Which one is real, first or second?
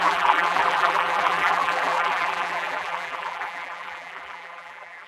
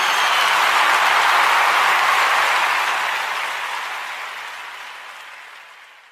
second